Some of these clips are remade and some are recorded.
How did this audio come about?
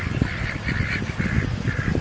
recorded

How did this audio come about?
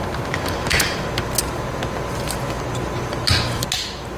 recorded